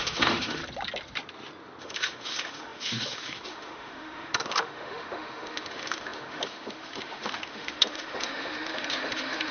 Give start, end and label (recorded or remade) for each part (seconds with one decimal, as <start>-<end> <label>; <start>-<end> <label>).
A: 0.0-0.6 remade; 0.6-1.8 recorded; 1.8-9.5 remade